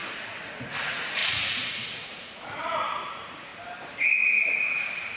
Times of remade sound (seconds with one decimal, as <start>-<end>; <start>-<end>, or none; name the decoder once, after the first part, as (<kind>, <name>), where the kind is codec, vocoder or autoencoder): 0.0-3.5 (vocoder, Vocos); 4.6-5.2